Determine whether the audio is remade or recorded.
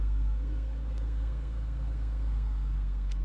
remade